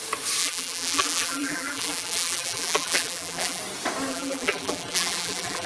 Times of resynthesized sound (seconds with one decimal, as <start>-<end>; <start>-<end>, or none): 0.4-3.6; 4.1-5.7